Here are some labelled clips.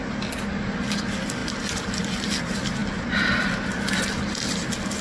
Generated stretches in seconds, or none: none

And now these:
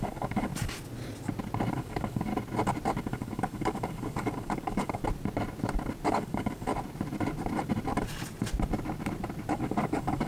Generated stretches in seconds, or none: 0.0-0.5 (codec, DAC); 1.7-2.3; 3.0-5.0; 6.1-6.7; 9.5-10.3

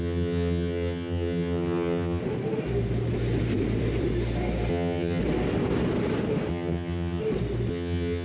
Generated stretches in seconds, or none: 0.0-2.2 (vocoder, HiFi-GAN); 4.7-5.2; 6.5-7.2; 7.7-8.2

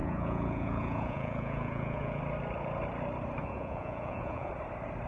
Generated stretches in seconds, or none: 0.0-2.2 (vocoder, Vocos); 3.4-4.5

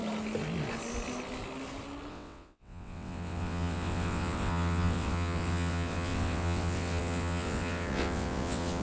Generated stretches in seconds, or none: 2.1-8.8 (vocoder, WaveNeXt)